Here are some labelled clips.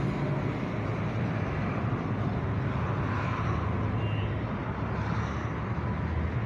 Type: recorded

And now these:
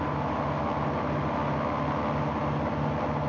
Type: recorded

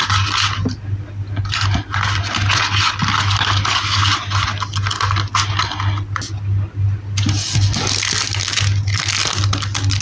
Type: recorded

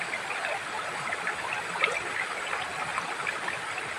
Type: recorded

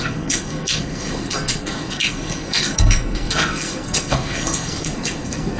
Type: remade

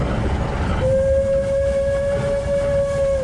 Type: recorded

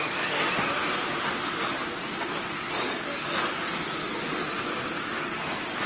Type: recorded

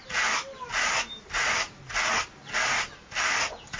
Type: recorded